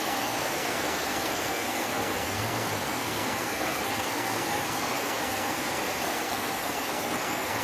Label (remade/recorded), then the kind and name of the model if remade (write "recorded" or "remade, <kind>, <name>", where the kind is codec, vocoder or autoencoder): remade, codec, SNAC